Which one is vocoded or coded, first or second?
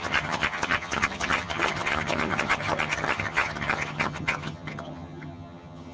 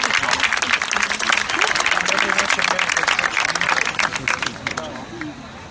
first